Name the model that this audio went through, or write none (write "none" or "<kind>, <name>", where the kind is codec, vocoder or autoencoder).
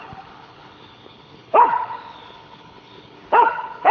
codec, HILCodec